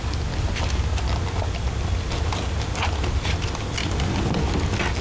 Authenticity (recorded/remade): recorded